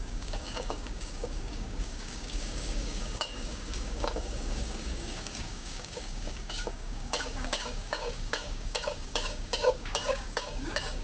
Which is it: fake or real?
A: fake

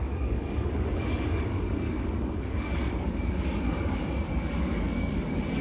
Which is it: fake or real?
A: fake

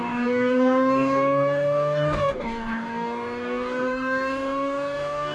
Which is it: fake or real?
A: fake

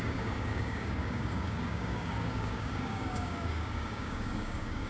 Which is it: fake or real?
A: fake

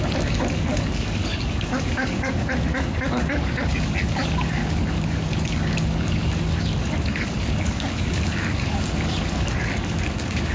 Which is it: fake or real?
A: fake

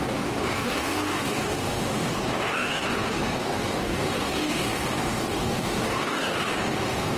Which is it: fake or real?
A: fake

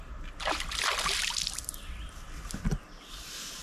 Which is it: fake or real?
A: real